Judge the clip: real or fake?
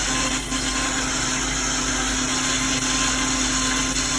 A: real